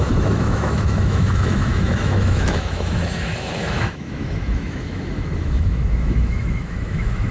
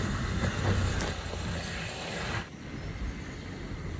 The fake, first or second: first